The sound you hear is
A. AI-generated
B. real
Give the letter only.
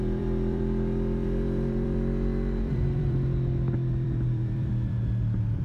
A